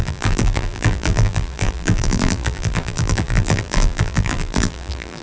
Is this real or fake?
fake